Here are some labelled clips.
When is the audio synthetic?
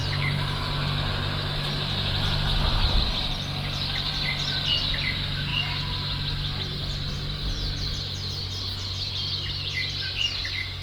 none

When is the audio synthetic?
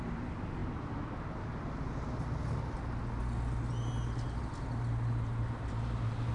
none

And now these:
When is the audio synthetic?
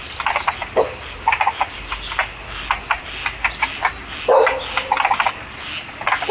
none